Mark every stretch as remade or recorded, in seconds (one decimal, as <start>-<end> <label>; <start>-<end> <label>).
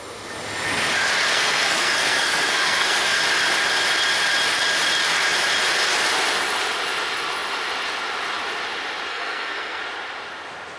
0.0-1.3 recorded; 1.3-3.2 remade; 3.2-9.1 recorded; 9.1-9.8 remade; 9.8-10.8 recorded